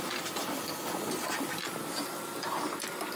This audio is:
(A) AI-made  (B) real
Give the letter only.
B